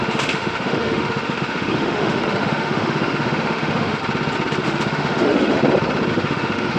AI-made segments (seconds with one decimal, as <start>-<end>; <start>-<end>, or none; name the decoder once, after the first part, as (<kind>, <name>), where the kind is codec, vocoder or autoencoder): 0.0-4.0 (autoencoder, DAC-VAE); 4.6-5.6; 6.1-6.8